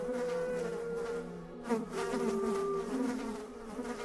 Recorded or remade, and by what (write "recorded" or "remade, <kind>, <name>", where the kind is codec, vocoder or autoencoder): remade, vocoder, BigVGAN v2